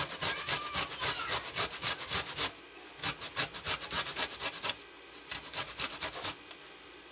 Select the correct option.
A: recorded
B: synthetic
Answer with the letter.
A